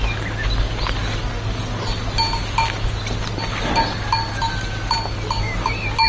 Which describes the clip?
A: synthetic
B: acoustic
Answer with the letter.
B